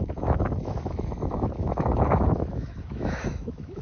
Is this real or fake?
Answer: fake